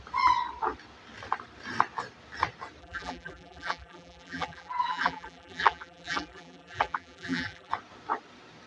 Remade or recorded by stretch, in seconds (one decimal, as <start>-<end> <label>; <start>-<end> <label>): 0.0-2.8 recorded; 2.8-7.7 remade; 7.7-8.7 recorded